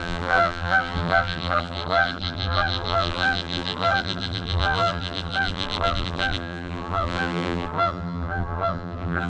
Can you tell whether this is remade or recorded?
remade